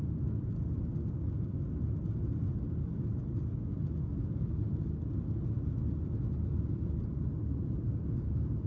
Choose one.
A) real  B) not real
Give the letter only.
A